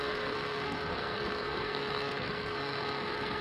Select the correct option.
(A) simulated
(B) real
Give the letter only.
A